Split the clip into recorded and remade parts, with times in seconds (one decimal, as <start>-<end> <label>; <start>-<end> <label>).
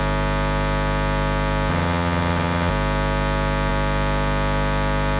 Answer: 0.0-1.7 recorded; 1.7-2.7 remade; 2.7-5.2 recorded